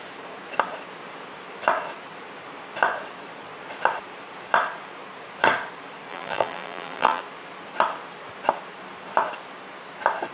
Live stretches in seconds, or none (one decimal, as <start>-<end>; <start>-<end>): 0.0-6.1; 7.2-10.3